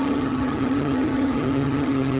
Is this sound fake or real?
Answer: fake